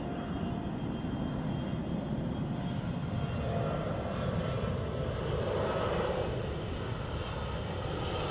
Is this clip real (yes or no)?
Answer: yes